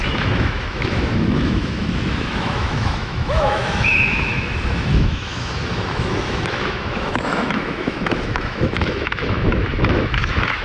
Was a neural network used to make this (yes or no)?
yes